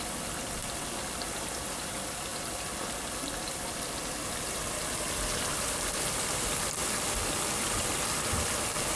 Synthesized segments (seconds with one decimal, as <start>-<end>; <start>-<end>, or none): none

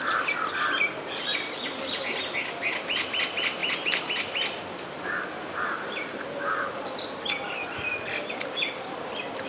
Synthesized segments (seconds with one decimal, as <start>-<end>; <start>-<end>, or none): 1.3-1.9; 3.6-6.2

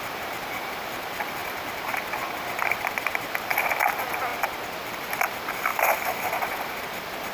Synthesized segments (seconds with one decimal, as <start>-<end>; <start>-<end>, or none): 0.0-4.3; 4.9-7.3

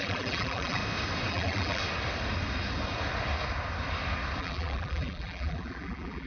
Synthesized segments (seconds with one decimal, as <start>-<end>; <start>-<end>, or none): 0.0-0.8; 1.3-1.8; 4.4-6.3